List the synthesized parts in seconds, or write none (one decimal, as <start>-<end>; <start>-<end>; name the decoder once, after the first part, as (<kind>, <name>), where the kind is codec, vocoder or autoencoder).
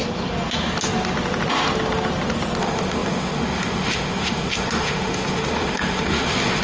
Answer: 2.6-6.6 (autoencoder, DAC-VAE)